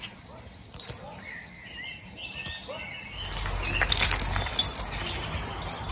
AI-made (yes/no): no